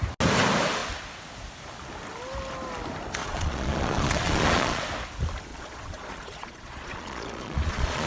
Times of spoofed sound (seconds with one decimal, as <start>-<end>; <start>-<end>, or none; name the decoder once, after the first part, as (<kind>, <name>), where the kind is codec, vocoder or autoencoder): 3.2-4.8 (vocoder, Vocos); 5.5-8.1